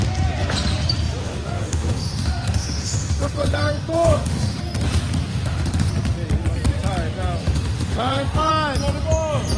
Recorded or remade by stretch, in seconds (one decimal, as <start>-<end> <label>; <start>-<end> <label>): 0.0-1.2 recorded; 1.2-4.6 remade; 4.6-5.3 recorded; 5.3-5.9 remade; 5.9-7.4 recorded; 7.4-8.5 remade; 8.5-9.6 recorded